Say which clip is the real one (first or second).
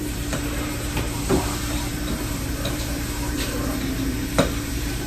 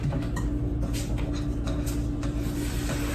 second